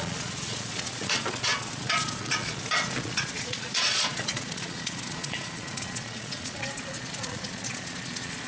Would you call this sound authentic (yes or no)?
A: no